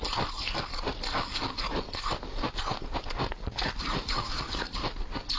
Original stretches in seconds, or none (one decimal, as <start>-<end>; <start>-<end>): 0.0-3.8; 4.8-5.4